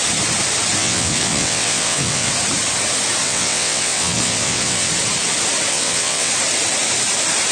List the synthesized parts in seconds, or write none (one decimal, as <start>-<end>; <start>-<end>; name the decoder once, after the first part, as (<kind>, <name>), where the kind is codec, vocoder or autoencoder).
0.8-2.3 (vocoder, WaveNeXt); 3.2-4.9; 5.7-6.3